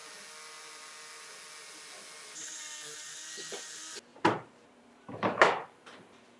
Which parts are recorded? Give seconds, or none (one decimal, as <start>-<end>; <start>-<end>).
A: 0.0-4.1